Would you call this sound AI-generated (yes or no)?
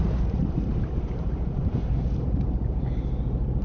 yes